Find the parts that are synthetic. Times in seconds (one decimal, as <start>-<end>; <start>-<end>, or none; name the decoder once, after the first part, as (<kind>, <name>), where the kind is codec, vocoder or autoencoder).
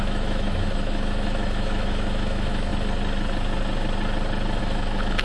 0.0-2.7 (autoencoder, DAC-VAE); 4.6-5.2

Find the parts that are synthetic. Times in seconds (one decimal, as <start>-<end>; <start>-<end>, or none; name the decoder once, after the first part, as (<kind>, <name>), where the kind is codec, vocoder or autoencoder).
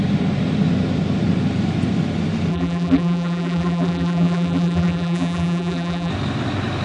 2.5-6.1 (vocoder, BigVGAN v2)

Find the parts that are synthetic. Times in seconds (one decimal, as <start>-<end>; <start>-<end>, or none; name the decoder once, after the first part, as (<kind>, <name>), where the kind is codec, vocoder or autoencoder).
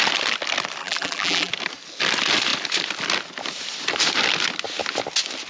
0.8-1.5 (vocoder, BigVGAN v2)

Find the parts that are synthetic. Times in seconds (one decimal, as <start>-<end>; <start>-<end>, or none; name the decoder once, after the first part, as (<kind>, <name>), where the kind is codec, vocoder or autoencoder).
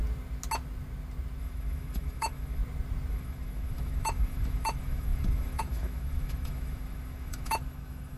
1.4-2.6 (autoencoder, DAC-VAE); 3.1-8.2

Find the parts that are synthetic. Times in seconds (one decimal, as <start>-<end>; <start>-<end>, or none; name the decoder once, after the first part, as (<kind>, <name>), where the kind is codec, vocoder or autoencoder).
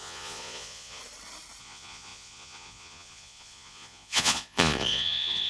0.0-1.0 (vocoder, Vocos); 1.6-5.5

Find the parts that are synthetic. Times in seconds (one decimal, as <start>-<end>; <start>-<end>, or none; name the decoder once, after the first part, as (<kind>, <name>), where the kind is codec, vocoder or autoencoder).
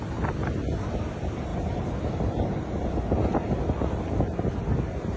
1.5-4.2 (vocoder, BigVGAN v2)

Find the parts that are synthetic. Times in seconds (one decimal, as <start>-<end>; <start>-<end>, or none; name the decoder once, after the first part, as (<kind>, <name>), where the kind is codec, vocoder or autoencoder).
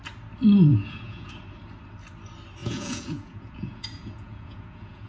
0.7-1.3 (vocoder, Vocos); 2.6-5.1